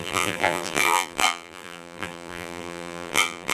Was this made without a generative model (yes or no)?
no